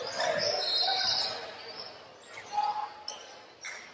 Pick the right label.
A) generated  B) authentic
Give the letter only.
B